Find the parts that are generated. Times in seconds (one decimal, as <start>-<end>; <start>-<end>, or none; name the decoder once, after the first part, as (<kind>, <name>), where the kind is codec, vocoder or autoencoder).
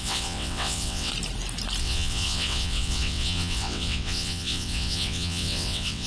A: 0.0-1.1 (vocoder, WaveNeXt); 1.8-6.1